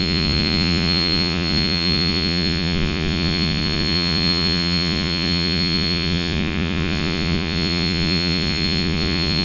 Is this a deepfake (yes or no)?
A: yes